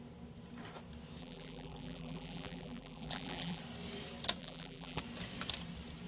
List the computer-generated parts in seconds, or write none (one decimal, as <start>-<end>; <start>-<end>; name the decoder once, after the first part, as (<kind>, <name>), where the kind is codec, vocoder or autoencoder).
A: 1.2-3.6 (vocoder, BigVGAN v2); 4.4-5.0